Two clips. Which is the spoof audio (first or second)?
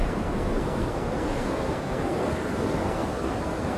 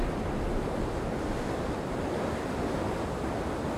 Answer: first